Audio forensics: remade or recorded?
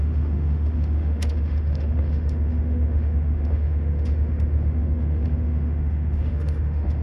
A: remade